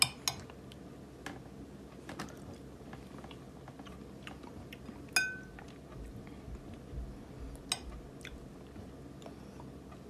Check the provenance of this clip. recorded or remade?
recorded